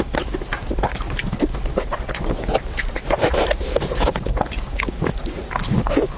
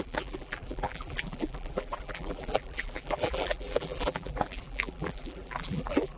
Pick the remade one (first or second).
second